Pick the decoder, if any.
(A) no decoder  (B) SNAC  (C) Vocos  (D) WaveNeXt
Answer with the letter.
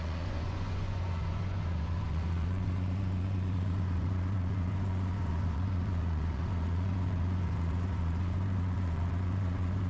C